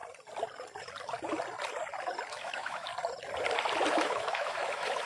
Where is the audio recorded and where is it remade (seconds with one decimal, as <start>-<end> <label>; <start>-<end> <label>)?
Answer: 0.0-2.3 recorded; 2.3-2.9 remade; 2.9-3.9 recorded; 3.9-5.1 remade